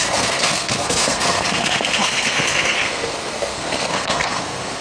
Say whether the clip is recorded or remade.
remade